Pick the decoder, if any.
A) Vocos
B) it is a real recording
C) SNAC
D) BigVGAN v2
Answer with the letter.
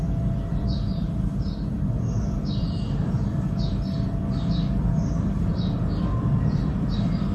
D